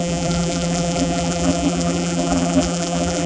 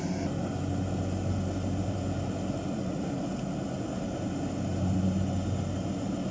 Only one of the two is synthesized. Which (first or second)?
first